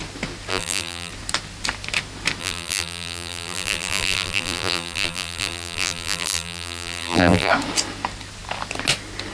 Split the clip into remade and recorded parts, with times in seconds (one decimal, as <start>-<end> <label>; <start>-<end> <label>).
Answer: 0.0-0.5 recorded; 0.5-1.1 remade; 1.1-2.4 recorded; 2.4-7.5 remade; 7.5-9.3 recorded